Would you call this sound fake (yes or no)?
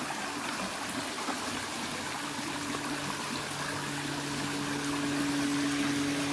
no